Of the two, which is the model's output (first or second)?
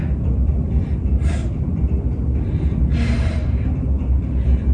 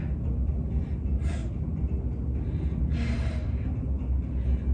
first